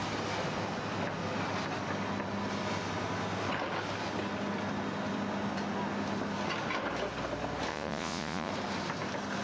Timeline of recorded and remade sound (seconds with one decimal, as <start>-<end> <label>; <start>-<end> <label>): 0.0-7.7 recorded; 7.7-8.5 remade; 8.5-9.4 recorded